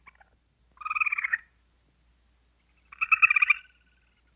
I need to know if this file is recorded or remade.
recorded